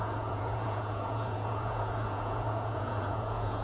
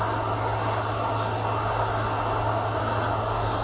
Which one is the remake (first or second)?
first